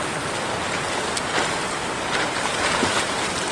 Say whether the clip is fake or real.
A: real